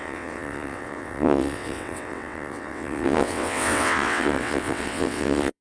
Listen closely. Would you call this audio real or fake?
fake